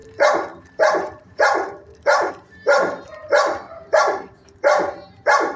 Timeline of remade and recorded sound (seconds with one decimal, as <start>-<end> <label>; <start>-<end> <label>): 0.0-5.6 remade